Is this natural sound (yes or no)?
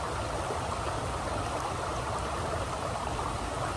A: yes